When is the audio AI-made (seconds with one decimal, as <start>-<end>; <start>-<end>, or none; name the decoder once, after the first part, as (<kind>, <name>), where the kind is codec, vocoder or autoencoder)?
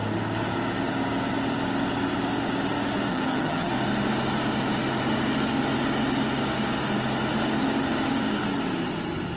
3.1-3.7 (vocoder, HiFi-GAN)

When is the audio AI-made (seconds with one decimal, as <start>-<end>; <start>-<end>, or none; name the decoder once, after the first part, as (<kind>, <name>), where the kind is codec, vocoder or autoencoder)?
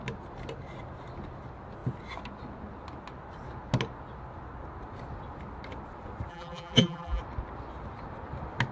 6.3-7.2 (vocoder, BigVGAN v2)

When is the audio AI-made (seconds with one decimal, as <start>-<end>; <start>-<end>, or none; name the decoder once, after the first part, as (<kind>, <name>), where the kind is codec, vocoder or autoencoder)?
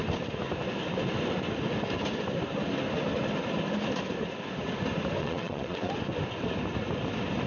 5.2-5.9 (vocoder, Vocos)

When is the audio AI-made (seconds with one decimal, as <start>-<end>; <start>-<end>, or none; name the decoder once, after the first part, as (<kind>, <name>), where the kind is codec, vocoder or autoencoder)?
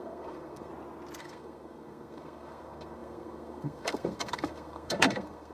0.0-0.7 (codec, SNAC); 1.2-5.5